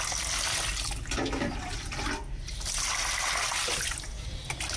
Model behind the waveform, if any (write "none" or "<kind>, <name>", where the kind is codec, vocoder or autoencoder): none